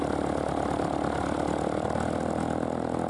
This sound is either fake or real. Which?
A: real